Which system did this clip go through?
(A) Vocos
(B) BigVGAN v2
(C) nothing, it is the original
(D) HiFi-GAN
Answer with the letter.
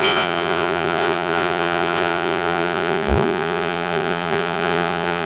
A